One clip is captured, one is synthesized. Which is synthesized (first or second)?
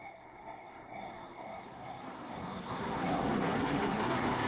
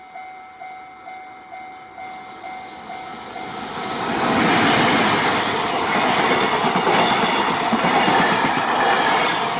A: first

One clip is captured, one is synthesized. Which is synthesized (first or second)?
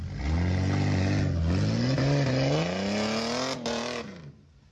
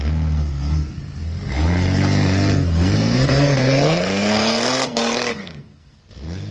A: second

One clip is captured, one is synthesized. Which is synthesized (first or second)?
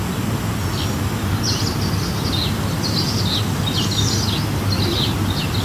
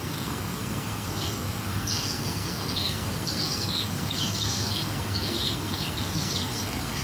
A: second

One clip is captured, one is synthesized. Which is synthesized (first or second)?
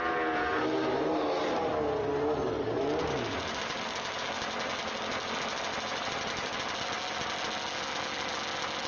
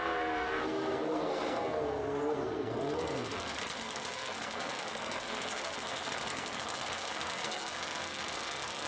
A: second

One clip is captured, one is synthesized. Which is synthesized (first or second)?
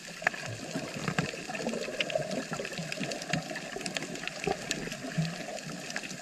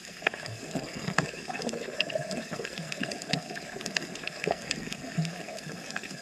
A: second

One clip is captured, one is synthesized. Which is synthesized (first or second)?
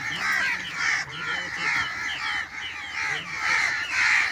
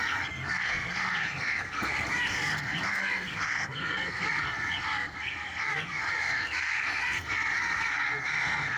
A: second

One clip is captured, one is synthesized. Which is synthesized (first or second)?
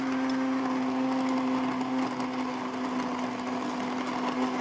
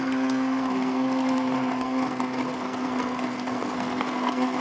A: second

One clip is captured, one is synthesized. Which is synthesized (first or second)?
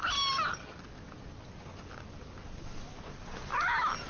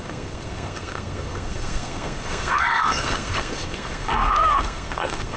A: second